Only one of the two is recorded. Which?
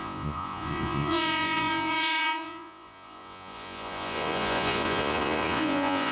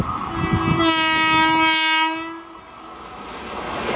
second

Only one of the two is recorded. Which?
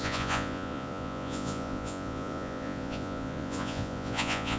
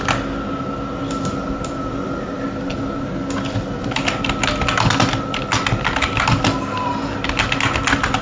second